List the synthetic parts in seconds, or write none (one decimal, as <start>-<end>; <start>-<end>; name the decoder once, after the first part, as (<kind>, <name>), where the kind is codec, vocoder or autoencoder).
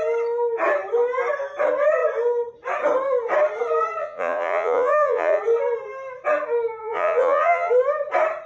4.0-5.4 (vocoder, Vocos); 6.8-7.7